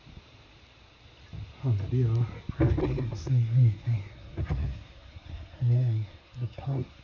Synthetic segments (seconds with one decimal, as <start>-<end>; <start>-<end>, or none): 2.8-7.0